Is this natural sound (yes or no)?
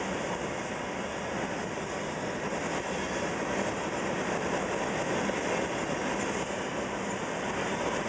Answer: yes